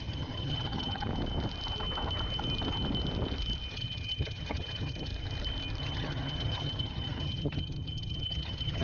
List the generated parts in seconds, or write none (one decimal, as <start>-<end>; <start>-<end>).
0.0-1.1; 3.7-5.1; 5.8-8.8